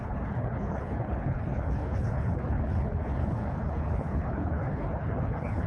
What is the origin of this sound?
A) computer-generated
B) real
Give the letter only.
A